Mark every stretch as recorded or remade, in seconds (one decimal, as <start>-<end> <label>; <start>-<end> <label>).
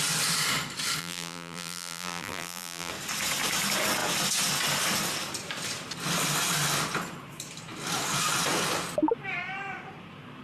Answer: 0.0-1.0 recorded; 1.0-2.9 remade; 2.9-10.4 recorded